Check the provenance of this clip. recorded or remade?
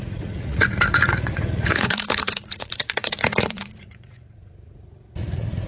remade